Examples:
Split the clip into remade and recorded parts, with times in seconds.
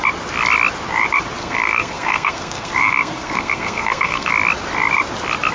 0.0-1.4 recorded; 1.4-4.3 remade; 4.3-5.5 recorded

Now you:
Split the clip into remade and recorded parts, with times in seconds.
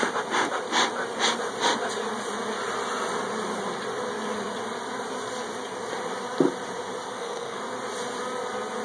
0.0-7.1 recorded; 7.1-7.6 remade; 7.6-8.8 recorded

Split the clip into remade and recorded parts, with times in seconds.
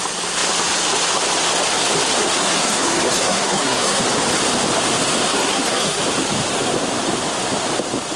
0.0-2.2 recorded; 2.2-4.0 remade; 4.0-5.3 recorded; 5.3-6.0 remade; 6.0-8.2 recorded